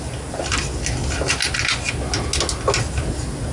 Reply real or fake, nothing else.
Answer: real